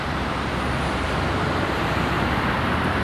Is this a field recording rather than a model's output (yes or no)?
no